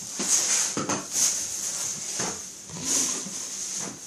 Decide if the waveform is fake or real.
real